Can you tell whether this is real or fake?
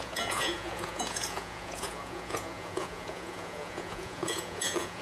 fake